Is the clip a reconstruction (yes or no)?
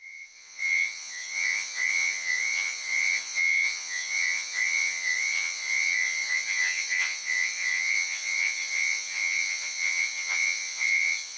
yes